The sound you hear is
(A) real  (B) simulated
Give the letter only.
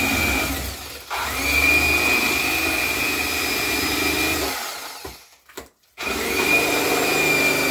A